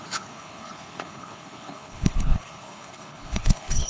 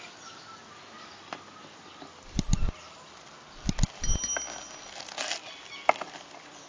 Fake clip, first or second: first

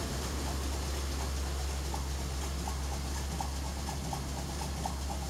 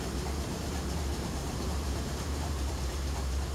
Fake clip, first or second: second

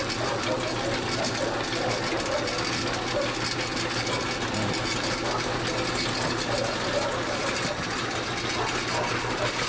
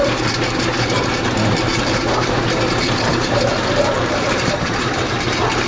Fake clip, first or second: second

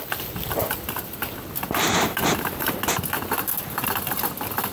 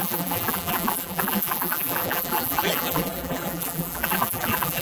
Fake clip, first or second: second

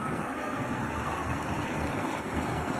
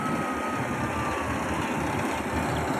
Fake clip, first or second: first